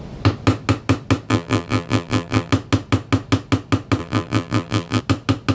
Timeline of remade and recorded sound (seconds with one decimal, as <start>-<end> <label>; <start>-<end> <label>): 0.0-1.3 recorded; 1.3-2.5 remade; 2.5-4.0 recorded; 4.0-5.0 remade; 5.0-5.5 recorded